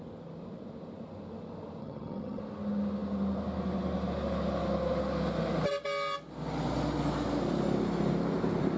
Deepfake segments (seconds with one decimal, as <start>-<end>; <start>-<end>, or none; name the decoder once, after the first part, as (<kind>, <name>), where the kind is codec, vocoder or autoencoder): 1.8-2.4 (vocoder, HiFi-GAN)